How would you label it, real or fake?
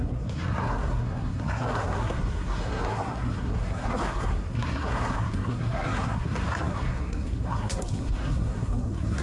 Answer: fake